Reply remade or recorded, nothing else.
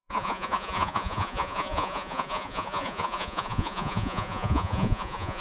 remade